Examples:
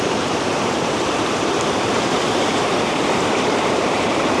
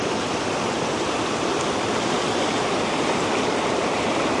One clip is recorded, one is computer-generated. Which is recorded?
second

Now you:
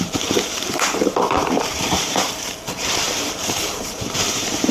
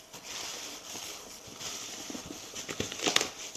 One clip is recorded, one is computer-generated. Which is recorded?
second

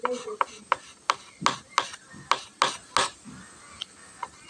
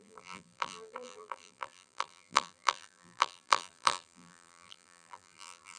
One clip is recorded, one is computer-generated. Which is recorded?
first